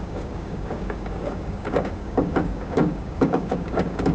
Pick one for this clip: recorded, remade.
remade